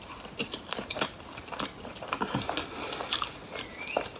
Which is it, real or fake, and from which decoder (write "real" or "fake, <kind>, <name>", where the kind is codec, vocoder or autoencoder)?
real